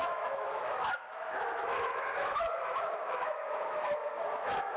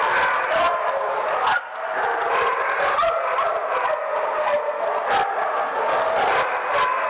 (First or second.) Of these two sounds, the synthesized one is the first